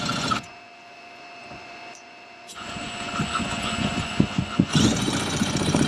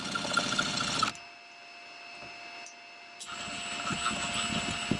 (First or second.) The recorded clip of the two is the second